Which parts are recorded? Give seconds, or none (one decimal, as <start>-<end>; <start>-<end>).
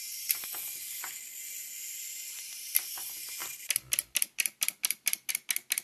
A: 0.0-3.4; 5.3-5.8